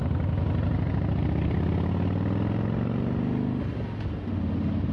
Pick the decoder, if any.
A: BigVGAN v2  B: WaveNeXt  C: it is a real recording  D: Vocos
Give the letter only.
C